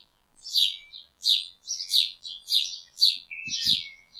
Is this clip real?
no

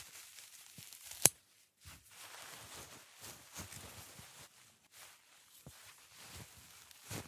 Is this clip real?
yes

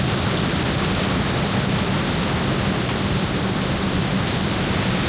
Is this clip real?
yes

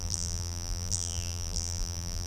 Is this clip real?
no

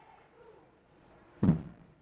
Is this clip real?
no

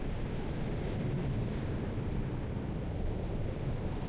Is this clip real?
yes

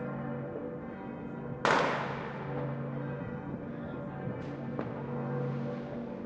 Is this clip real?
yes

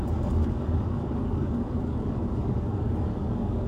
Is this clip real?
no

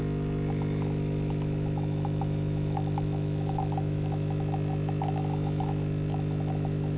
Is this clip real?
no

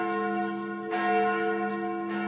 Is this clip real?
yes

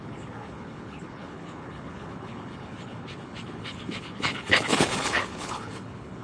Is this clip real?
no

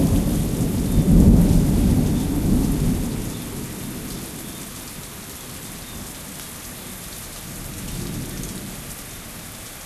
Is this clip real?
yes